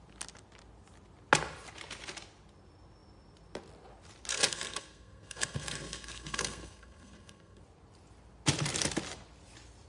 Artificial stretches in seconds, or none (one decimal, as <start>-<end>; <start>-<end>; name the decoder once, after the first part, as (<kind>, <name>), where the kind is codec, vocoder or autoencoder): 4.3-7.6 (codec, SNAC)